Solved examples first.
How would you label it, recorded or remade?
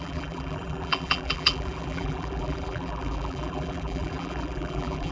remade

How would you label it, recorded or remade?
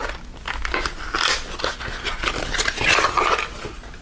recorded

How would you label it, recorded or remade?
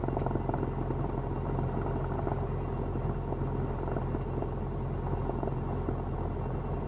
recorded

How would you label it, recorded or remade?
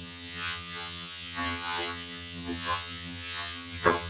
remade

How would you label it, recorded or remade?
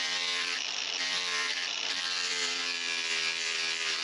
remade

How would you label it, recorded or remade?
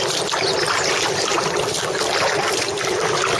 recorded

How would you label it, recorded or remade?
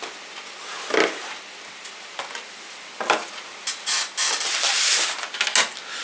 recorded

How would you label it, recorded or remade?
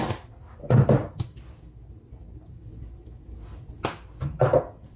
recorded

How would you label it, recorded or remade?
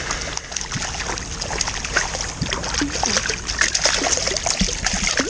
recorded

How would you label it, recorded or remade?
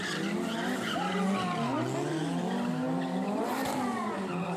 recorded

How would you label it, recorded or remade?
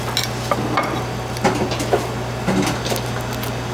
recorded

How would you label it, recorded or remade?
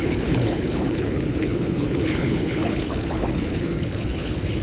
remade